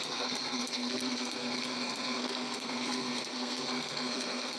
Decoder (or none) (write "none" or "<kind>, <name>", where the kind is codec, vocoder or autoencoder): codec, SNAC